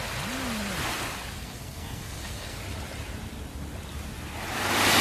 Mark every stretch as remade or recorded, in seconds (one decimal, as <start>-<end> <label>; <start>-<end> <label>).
0.0-1.4 recorded; 1.4-2.6 remade; 2.6-5.0 recorded

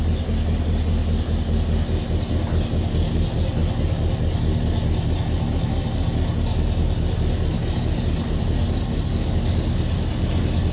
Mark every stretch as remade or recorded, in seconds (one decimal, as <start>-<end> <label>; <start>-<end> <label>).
0.0-10.7 recorded